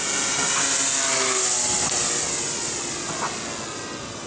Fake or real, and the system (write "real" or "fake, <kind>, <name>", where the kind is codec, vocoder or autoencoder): real